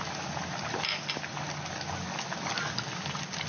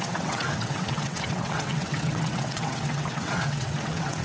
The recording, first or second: first